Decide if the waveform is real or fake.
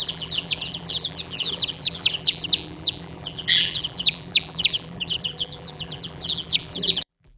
fake